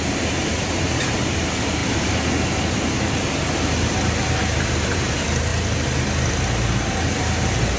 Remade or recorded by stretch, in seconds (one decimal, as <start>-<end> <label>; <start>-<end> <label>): 0.0-0.5 recorded; 0.5-1.4 remade; 1.4-1.8 recorded; 1.8-2.6 remade; 2.6-4.4 recorded; 4.4-5.1 remade; 5.1-7.8 recorded